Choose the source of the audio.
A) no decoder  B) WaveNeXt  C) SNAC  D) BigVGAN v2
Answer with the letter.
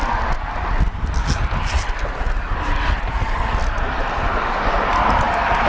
A